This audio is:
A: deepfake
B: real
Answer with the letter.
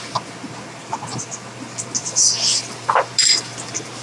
B